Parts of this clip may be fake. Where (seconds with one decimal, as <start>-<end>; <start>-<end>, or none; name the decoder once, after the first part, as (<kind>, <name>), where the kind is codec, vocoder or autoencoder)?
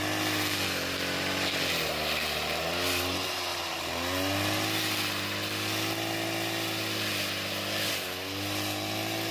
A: none